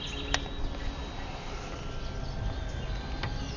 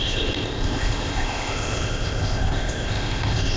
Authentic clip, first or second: first